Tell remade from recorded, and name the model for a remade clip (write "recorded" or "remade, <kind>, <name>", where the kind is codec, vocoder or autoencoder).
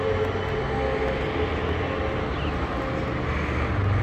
recorded